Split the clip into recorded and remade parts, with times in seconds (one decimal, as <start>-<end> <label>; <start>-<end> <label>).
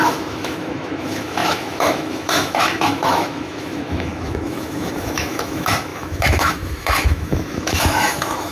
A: 0.0-8.5 remade